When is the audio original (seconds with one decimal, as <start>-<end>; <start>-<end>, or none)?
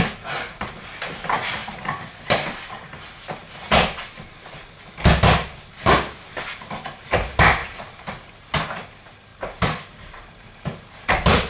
0.0-7.6; 8.1-9.3